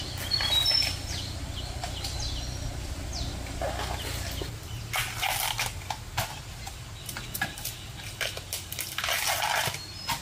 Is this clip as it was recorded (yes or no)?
yes